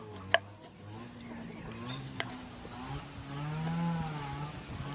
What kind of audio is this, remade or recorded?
recorded